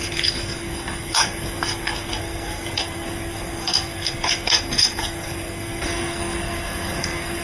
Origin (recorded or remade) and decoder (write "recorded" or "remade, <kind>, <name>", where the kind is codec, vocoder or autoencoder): remade, codec, SNAC